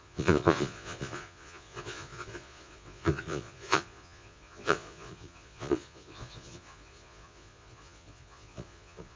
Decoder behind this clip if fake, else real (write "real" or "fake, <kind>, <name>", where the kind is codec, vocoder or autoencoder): fake, vocoder, Vocos